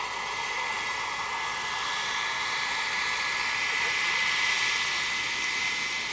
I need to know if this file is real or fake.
real